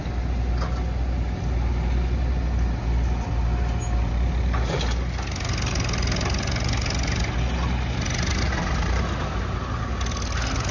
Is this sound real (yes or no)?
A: yes